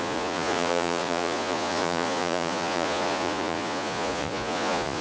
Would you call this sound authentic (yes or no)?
no